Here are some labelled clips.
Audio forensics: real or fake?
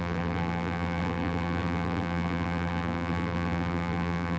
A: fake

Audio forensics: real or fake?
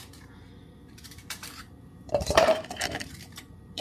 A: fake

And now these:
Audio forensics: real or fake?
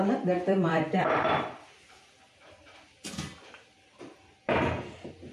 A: fake